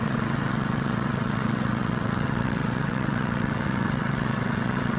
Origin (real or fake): fake